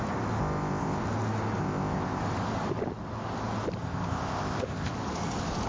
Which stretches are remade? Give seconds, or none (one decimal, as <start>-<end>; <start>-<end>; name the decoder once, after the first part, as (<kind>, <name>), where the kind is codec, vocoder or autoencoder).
0.4-1.0 (codec, ZipCodec); 1.6-2.2; 3.8-4.9